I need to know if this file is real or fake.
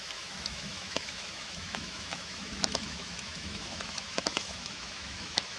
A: fake